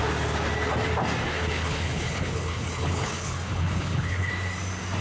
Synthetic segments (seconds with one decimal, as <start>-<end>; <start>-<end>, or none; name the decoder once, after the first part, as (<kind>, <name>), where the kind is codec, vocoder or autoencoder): 1.3-4.3 (codec, HILCodec)